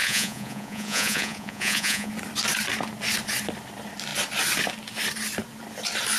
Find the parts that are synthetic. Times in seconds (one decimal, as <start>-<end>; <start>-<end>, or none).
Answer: 0.0-2.1